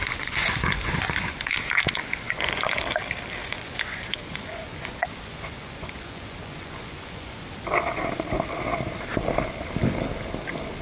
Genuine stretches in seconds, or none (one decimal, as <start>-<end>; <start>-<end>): 2.8-3.4; 7.4-10.8